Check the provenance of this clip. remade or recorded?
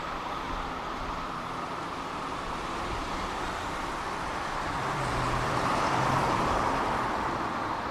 remade